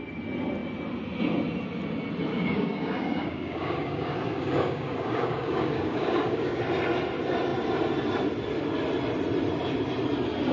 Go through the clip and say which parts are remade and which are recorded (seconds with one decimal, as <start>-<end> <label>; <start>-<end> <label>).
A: 0.0-2.3 recorded; 2.3-6.6 remade; 6.6-10.5 recorded